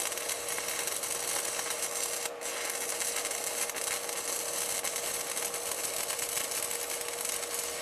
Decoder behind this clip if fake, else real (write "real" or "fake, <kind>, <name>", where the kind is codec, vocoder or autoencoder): real